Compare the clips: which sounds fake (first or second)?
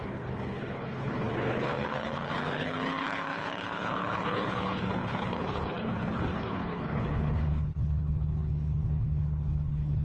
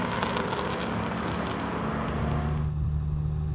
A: first